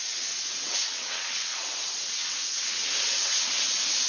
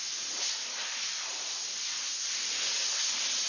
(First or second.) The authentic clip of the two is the second